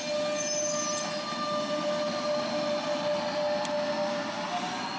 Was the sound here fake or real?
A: real